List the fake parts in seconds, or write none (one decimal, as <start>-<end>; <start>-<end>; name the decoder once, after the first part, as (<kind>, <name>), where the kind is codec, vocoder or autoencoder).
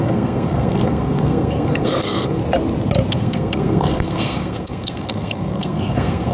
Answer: 0.0-2.4 (codec, SNAC); 3.1-6.3